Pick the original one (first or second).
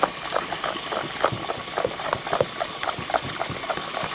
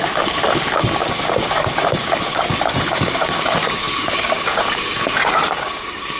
first